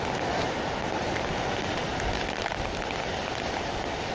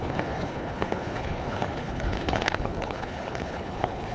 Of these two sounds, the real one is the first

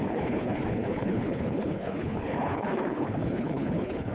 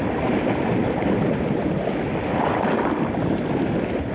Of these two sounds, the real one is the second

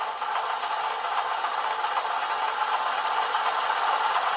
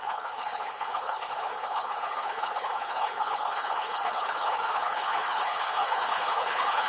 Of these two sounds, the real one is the first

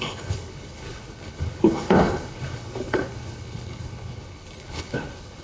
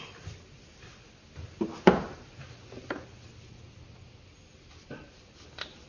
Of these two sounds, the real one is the second